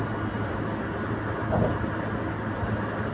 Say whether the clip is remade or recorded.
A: recorded